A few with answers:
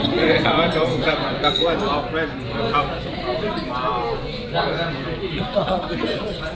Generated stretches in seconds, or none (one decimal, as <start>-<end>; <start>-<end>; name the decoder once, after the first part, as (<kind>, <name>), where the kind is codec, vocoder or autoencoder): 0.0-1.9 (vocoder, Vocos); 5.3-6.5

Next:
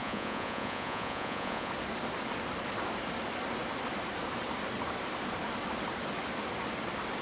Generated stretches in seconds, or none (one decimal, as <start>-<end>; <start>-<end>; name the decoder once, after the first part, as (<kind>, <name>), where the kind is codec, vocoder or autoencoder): 0.0-1.7 (vocoder, Vocos)

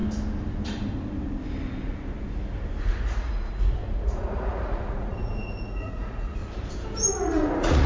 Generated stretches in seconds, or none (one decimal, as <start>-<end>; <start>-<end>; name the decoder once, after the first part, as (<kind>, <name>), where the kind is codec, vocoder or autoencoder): 2.8-6.4 (vocoder, Vocos); 7.1-7.9

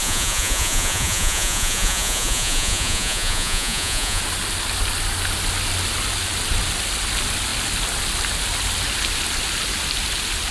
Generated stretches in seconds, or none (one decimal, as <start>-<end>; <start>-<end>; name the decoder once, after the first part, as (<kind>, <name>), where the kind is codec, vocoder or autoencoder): 0.0-4.2 (vocoder, Vocos)